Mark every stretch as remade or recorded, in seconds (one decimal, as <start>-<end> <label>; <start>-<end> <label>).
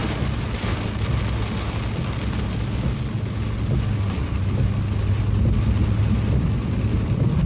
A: 0.0-7.5 recorded